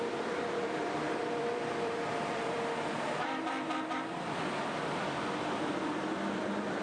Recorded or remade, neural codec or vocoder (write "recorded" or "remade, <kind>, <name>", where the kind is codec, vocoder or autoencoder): remade, vocoder, BigVGAN v2